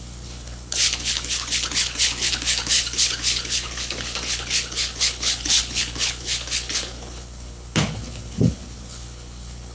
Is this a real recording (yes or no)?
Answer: no